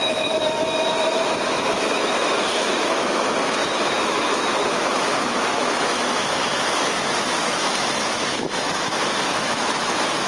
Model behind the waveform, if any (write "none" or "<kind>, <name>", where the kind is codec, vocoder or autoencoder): autoencoder, DAC-VAE